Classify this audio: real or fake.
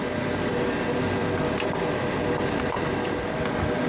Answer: real